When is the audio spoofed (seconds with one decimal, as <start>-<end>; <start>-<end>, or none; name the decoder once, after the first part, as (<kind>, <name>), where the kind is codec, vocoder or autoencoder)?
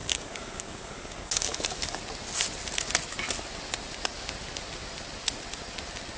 0.0-2.0 (codec, DAC)